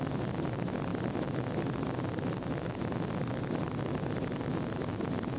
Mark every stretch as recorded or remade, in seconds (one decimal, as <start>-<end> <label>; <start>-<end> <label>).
0.0-5.4 recorded